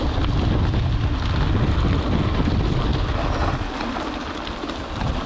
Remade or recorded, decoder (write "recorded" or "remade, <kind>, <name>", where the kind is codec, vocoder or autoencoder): recorded